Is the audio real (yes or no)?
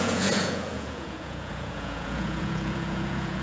no